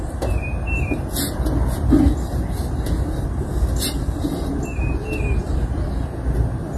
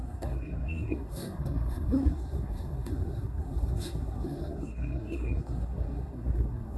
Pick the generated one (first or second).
second